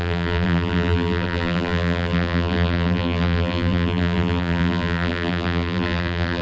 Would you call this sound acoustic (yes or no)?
no